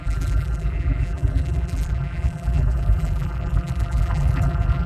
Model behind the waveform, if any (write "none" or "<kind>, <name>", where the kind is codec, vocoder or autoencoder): vocoder, BigVGAN v2